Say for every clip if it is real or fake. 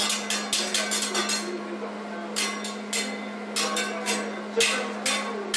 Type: real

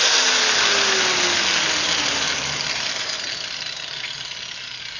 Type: real